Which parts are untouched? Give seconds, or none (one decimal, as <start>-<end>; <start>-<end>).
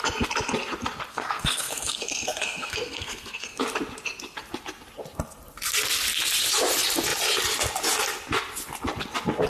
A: 0.0-1.1; 3.6-9.5